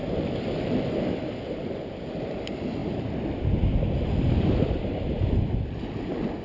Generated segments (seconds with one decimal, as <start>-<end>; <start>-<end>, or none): 0.0-2.1; 2.8-3.4